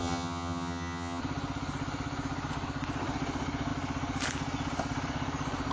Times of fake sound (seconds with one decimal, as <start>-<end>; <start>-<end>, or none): 0.0-1.2